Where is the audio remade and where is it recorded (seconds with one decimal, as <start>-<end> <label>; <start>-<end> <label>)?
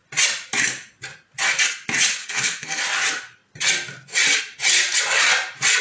0.0-2.2 recorded; 2.2-2.8 remade; 2.8-5.8 recorded